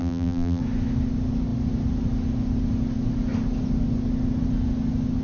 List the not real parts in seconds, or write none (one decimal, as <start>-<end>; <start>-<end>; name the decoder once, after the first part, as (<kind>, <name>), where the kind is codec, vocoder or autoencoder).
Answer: 0.0-0.6 (vocoder, BigVGAN v2)